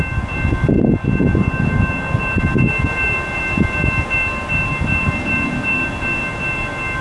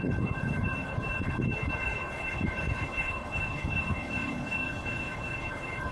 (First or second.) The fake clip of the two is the second